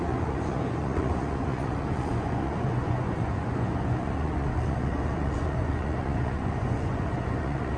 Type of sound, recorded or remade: remade